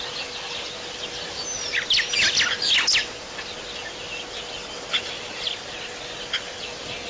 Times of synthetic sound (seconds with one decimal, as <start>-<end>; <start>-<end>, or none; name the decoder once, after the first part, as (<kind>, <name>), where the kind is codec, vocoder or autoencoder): none